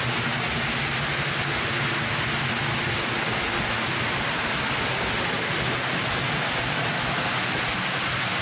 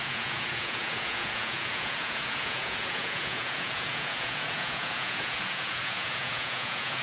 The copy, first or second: second